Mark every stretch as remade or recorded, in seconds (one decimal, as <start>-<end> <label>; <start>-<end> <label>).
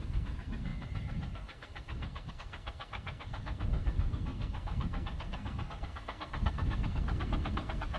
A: 0.0-8.0 remade